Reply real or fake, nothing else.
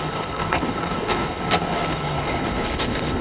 fake